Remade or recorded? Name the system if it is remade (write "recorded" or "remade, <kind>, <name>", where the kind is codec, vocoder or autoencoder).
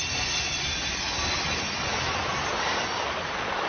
recorded